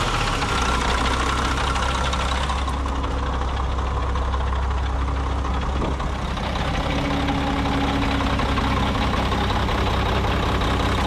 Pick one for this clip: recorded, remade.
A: recorded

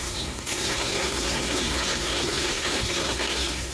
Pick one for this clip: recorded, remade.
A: remade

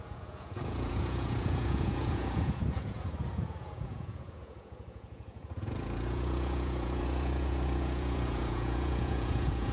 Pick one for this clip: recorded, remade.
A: remade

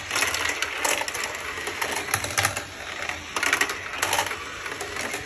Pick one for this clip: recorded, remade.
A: recorded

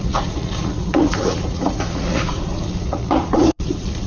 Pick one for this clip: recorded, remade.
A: remade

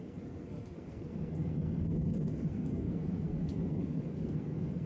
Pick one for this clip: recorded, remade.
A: remade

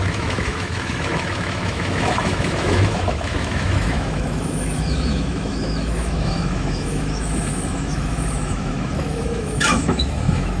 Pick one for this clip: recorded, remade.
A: remade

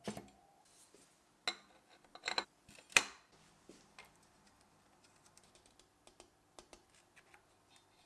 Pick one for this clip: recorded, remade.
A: recorded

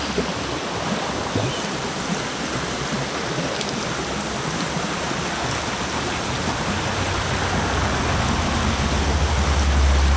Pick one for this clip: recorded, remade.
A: recorded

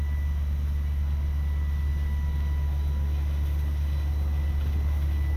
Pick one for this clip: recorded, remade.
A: recorded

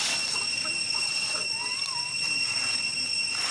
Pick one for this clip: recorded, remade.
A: recorded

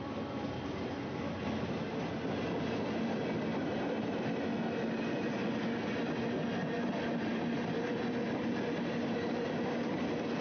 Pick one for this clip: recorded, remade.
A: recorded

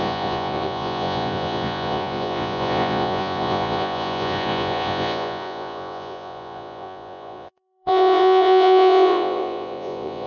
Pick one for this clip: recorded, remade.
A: remade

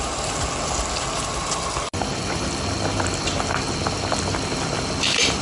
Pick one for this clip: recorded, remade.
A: recorded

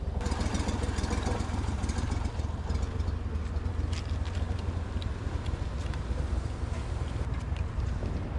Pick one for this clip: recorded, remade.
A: recorded